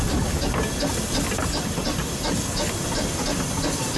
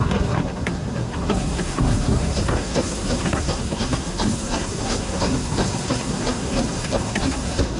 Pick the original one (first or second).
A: first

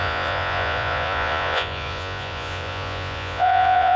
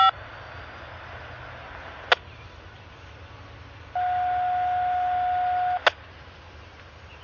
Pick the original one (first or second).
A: second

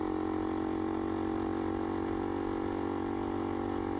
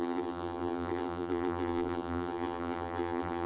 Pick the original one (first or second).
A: first